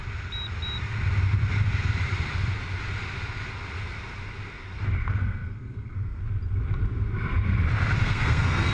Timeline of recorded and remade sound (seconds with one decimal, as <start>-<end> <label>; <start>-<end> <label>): 0.0-5.2 recorded; 5.2-6.2 remade; 6.2-8.0 recorded; 8.0-8.7 remade